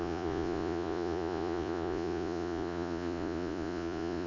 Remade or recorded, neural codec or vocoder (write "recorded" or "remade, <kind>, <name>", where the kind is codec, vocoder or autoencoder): remade, vocoder, Vocos